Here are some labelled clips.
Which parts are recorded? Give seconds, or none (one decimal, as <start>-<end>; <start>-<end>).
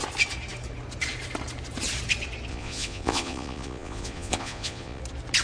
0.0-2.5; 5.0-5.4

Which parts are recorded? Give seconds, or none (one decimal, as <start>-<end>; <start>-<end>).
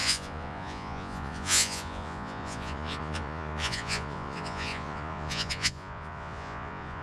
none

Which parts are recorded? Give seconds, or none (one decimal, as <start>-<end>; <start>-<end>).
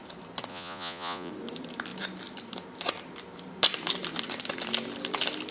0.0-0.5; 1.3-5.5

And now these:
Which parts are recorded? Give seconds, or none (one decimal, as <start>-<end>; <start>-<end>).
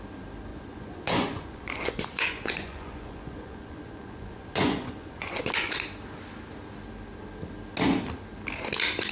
0.0-0.5; 5.7-9.1